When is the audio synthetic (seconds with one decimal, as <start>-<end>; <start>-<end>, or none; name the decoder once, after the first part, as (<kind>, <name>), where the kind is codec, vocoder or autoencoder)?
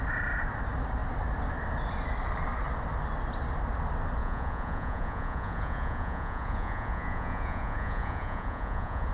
4.2-9.1 (vocoder, Vocos)